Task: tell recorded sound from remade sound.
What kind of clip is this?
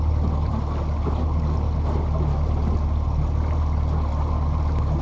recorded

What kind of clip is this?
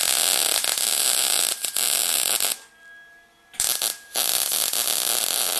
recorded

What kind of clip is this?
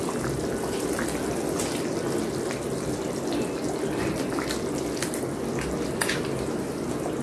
recorded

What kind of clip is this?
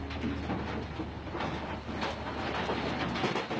recorded